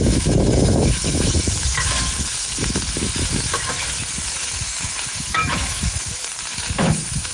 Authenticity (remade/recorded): remade